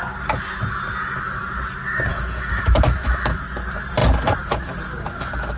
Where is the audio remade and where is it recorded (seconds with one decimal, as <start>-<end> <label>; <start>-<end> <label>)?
0.0-2.1 recorded; 2.1-3.4 remade; 3.4-5.6 recorded